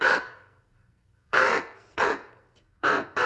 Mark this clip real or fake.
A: fake